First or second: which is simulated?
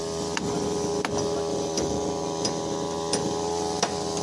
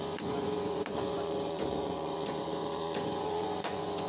second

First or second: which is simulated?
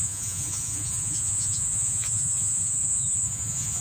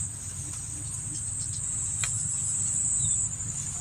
first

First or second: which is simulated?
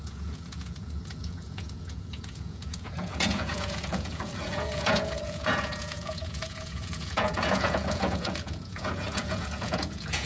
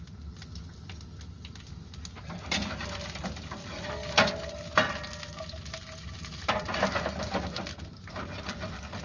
first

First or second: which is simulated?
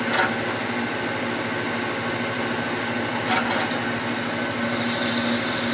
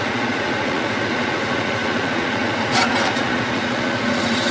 second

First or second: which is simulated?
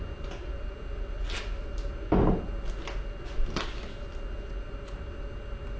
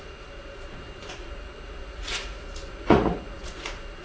second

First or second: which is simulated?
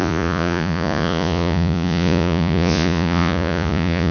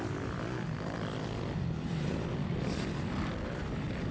first